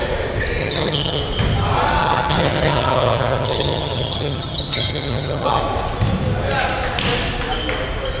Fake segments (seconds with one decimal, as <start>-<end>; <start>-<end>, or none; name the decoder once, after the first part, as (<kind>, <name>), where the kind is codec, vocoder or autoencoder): 0.6-1.2 (vocoder, HiFi-GAN); 2.0-5.6